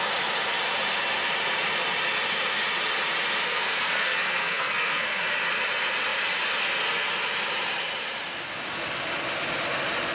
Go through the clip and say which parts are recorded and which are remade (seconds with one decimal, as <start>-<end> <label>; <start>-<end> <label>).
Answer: 0.0-3.5 recorded; 3.5-5.2 remade; 5.2-10.1 recorded